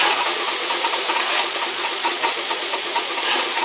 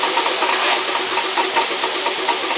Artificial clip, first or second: first